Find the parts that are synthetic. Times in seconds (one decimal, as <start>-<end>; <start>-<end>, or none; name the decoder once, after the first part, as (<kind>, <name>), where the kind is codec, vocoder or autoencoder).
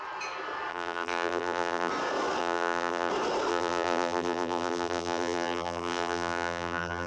0.7-1.9 (vocoder, BigVGAN v2); 2.4-3.1; 3.5-7.1